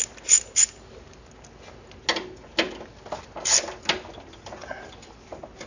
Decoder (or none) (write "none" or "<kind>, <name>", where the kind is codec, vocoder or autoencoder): none